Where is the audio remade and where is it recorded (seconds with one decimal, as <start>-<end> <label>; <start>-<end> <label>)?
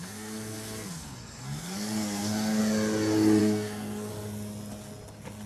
0.0-2.6 remade; 2.6-3.4 recorded; 3.4-4.1 remade; 4.1-5.5 recorded